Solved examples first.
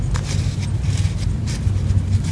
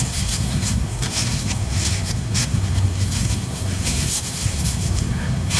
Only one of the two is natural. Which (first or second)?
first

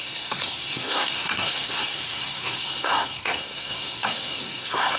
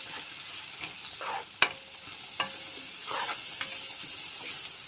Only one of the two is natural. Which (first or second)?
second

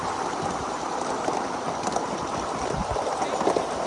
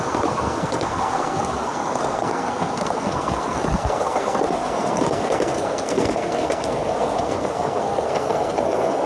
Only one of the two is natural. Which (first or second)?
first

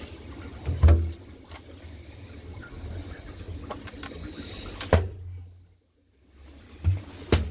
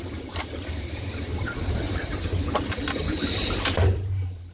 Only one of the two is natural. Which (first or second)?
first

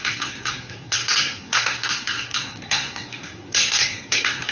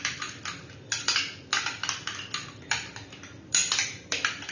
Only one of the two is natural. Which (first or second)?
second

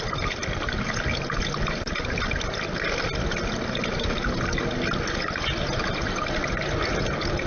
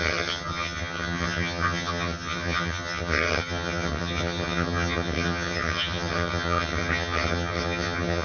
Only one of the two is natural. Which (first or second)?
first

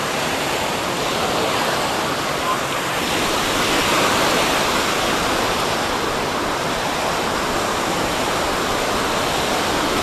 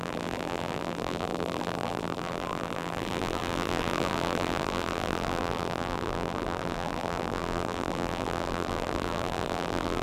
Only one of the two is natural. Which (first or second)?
first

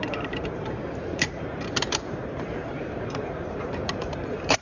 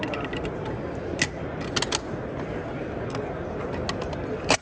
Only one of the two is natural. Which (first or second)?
second